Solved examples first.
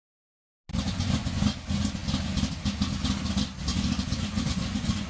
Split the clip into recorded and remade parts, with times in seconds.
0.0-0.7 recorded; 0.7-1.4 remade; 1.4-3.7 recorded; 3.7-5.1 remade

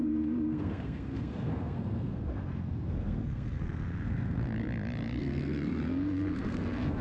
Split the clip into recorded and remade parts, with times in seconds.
0.0-4.5 remade; 4.5-5.2 recorded; 5.2-7.0 remade

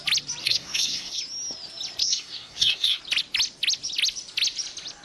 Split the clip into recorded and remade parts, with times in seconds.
0.0-0.4 recorded; 0.4-1.2 remade; 1.2-2.0 recorded; 2.0-3.0 remade; 3.0-5.0 recorded

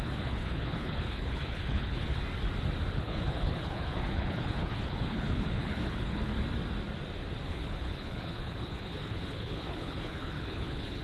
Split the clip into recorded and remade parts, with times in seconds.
0.0-2.2 remade; 2.2-2.9 recorded; 2.9-6.3 remade; 6.3-7.5 recorded; 7.5-11.0 remade

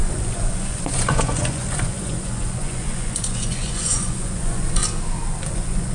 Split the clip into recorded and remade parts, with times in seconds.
0.0-4.8 remade; 4.8-5.5 recorded; 5.5-5.9 remade

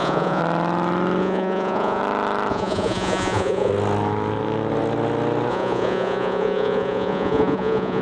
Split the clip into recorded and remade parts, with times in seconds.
0.0-0.4 remade; 0.4-1.2 recorded; 1.2-2.0 remade; 2.0-2.5 recorded; 2.5-3.7 remade; 3.7-5.5 recorded; 5.5-8.0 remade